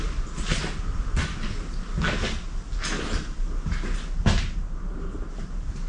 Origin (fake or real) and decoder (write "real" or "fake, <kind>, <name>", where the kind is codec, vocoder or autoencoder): real